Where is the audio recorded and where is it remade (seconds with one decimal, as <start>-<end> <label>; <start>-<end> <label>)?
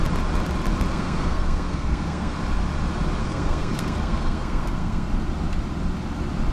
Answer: 0.0-0.9 recorded; 0.9-2.3 remade; 2.3-3.2 recorded; 3.2-5.1 remade; 5.1-6.5 recorded